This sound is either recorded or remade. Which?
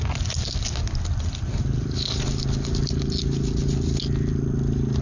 recorded